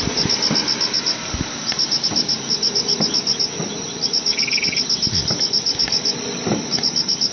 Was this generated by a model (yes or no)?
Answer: no